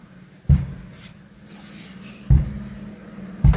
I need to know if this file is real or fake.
real